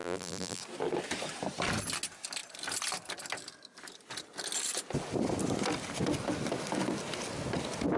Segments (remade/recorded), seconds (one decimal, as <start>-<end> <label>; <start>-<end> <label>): 0.0-0.6 remade; 0.6-8.0 recorded